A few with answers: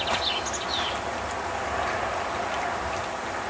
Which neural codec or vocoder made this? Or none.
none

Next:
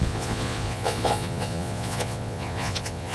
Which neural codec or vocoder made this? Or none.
vocoder, Vocos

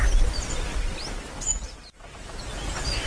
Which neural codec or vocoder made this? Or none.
none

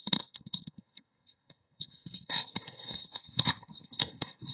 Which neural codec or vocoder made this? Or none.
codec, SNAC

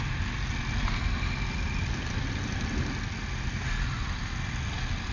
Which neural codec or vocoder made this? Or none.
none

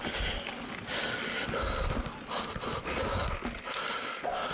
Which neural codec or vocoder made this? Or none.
none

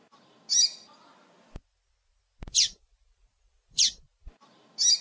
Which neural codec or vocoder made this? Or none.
none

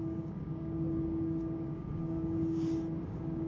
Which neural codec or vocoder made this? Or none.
codec, DAC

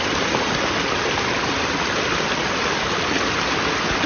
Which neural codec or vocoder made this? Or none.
none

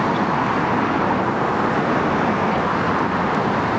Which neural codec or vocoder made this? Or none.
none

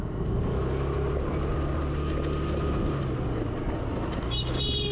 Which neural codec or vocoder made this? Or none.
none